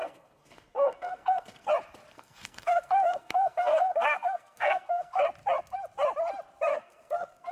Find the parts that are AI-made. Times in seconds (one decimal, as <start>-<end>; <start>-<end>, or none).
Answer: 0.0-1.7; 2.1-5.2; 6.7-7.5

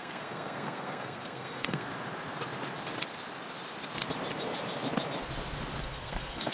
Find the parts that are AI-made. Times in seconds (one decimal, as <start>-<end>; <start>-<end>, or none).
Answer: 0.0-1.9; 5.8-6.5

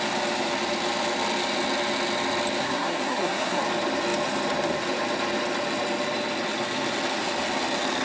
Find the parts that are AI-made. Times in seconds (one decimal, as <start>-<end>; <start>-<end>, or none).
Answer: 2.6-3.6